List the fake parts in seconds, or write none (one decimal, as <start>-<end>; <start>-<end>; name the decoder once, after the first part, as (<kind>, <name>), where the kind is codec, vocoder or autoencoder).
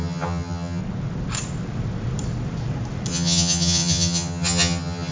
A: 0.0-0.8 (vocoder, HiFi-GAN); 3.1-5.1